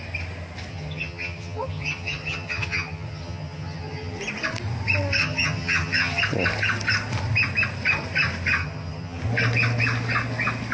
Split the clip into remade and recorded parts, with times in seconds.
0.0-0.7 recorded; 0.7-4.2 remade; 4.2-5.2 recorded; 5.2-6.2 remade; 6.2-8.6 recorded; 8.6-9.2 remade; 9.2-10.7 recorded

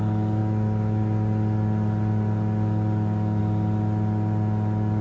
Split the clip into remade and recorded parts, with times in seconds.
0.0-5.0 recorded

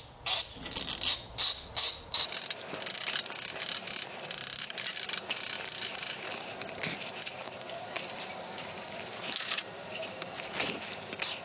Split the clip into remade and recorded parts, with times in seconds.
0.0-11.4 recorded

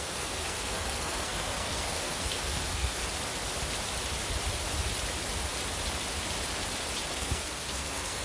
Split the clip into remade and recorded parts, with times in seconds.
0.0-3.0 remade; 3.0-7.1 recorded; 7.1-8.2 remade

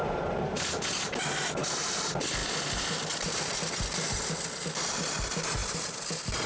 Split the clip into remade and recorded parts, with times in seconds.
0.0-6.5 recorded

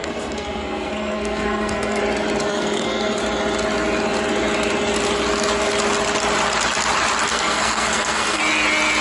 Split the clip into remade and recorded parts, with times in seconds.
0.0-2.0 remade; 2.0-2.5 recorded; 2.5-3.2 remade; 3.2-7.3 recorded; 7.3-8.4 remade; 8.4-9.0 recorded